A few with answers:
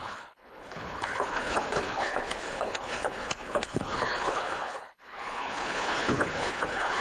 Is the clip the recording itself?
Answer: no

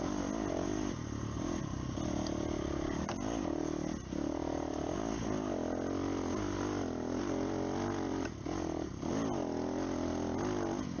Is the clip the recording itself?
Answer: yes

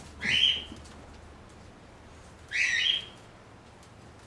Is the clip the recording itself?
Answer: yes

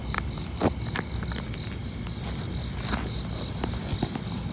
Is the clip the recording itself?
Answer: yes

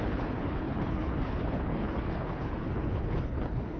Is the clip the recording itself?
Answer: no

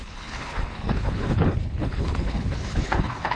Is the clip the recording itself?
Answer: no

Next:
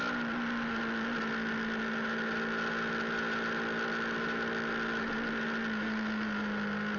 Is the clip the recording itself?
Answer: yes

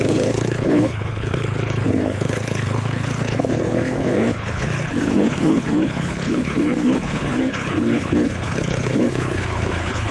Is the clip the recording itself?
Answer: no